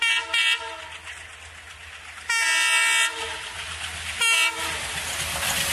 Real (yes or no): yes